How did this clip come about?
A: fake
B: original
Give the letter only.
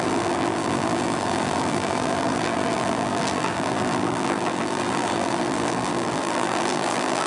A